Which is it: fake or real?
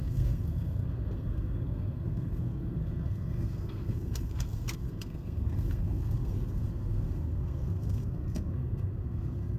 fake